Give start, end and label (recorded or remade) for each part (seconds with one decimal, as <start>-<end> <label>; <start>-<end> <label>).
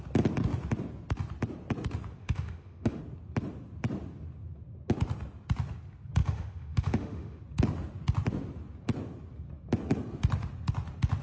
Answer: 0.0-2.2 recorded; 2.2-3.0 remade; 3.0-6.2 recorded; 6.2-7.4 remade; 7.4-11.2 recorded